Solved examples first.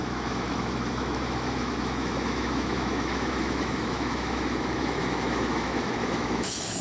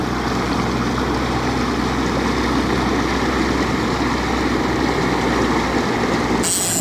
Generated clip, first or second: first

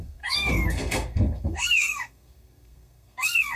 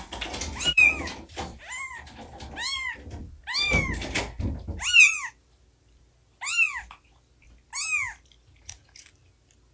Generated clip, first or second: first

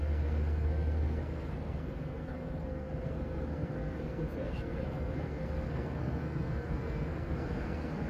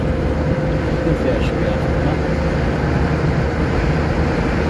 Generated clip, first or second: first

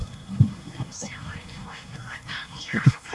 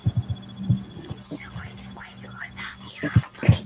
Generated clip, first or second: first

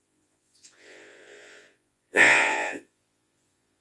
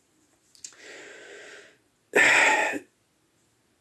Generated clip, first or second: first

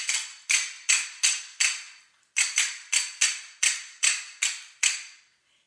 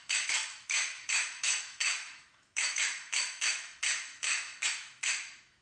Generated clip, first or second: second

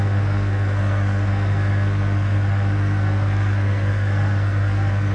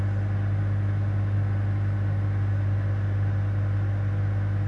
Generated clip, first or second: first